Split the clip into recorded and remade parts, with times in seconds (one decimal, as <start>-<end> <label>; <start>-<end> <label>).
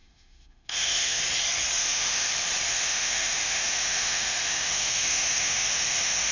0.0-1.2 remade; 1.2-1.8 recorded; 1.8-2.3 remade; 2.3-2.7 recorded; 2.7-6.3 remade